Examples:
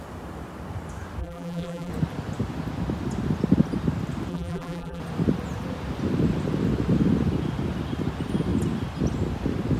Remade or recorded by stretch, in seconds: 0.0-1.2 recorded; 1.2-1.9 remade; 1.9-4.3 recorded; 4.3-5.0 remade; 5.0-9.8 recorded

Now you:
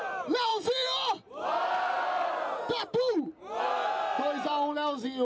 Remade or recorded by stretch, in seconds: 0.0-5.2 recorded

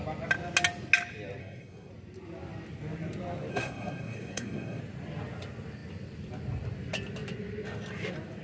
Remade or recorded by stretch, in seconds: 0.0-1.4 recorded; 1.4-1.9 remade; 1.9-3.5 recorded; 3.5-4.8 remade; 4.8-8.4 recorded

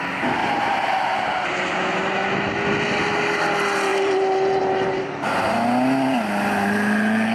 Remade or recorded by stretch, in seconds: 0.0-0.4 recorded; 0.4-1.8 remade; 1.8-3.9 recorded; 3.9-4.6 remade; 4.6-7.3 recorded